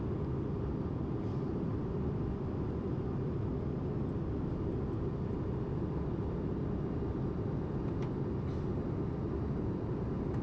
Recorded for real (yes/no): yes